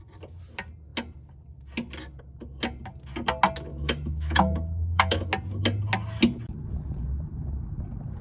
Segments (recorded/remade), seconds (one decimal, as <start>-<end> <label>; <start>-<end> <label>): 0.0-3.7 recorded; 3.7-5.3 remade; 5.3-8.2 recorded